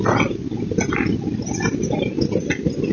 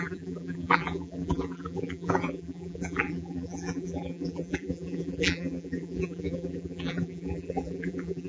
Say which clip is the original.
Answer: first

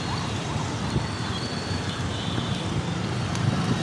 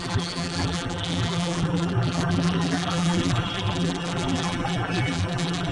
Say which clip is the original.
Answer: first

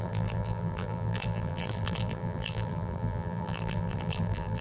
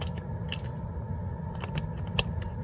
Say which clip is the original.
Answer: second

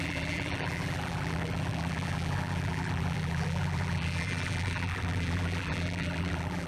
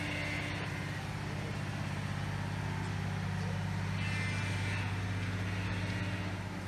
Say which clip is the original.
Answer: second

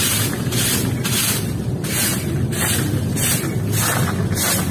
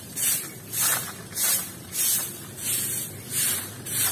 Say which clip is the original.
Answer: first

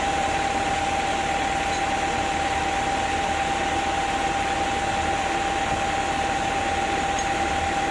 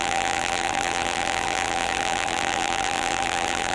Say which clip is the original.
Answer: first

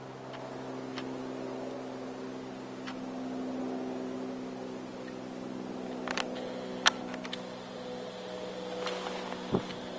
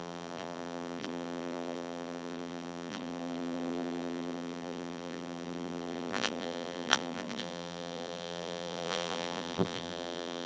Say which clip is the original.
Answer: first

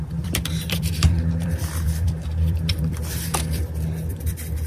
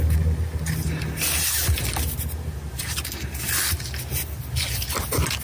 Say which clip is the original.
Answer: second